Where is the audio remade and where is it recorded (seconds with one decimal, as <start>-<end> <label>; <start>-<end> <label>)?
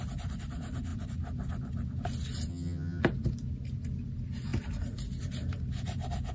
0.0-2.5 recorded; 2.5-3.0 remade; 3.0-6.3 recorded